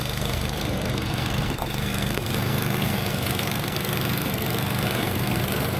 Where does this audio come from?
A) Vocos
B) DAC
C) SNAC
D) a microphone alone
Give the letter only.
C